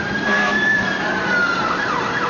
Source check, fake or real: fake